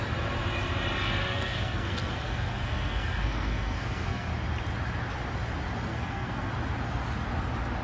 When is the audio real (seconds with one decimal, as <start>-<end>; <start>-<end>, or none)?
0.0-1.2; 4.3-5.9; 6.5-7.8